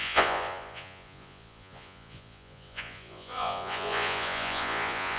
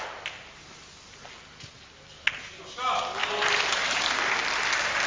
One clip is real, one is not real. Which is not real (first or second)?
first